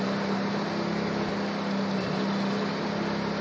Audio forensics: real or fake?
real